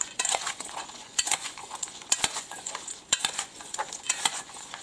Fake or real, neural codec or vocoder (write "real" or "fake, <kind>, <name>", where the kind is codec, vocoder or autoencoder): fake, vocoder, Vocos